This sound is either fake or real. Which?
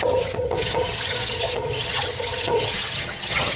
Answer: fake